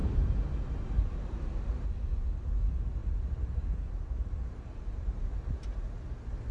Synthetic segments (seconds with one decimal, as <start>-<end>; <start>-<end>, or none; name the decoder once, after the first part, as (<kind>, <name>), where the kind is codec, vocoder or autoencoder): 3.0-5.2 (vocoder, BigVGAN v2)